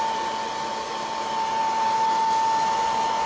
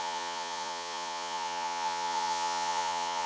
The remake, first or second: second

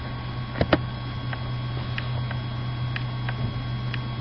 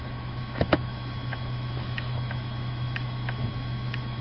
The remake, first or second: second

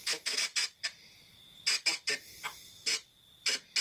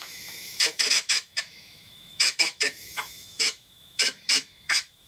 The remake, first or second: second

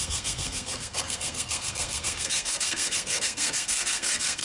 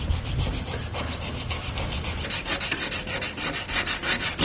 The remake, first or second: first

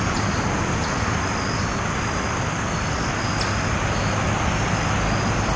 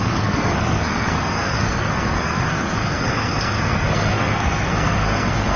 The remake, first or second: second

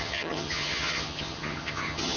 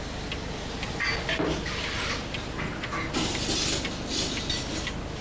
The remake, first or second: first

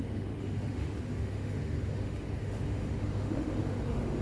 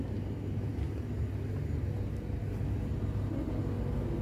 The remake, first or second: first